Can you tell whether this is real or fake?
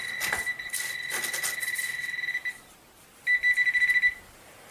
real